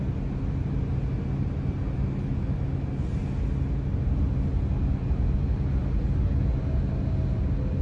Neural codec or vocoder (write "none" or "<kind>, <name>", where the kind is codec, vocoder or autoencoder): none